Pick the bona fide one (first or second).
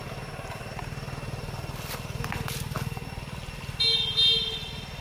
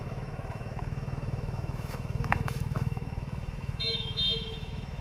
first